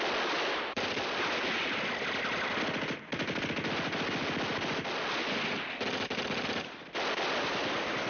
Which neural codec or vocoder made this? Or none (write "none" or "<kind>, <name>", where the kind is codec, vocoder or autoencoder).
none